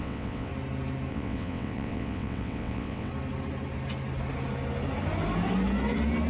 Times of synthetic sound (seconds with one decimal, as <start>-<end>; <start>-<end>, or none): 0.0-0.5; 1.1-3.1

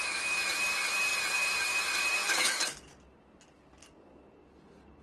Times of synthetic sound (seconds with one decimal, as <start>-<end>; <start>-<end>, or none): 2.2-2.8

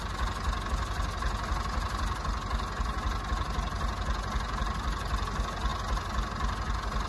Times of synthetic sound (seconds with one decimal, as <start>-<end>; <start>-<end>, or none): none

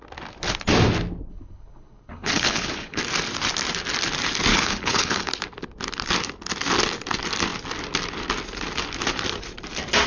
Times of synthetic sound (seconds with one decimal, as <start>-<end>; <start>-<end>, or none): 1.3-3.0; 4.5-5.3

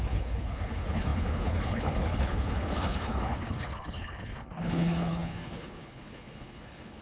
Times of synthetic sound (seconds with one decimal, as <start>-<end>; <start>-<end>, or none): 0.0-7.0

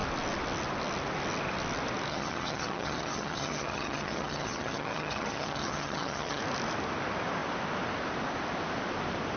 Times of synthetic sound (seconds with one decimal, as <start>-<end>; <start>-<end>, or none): 2.1-6.4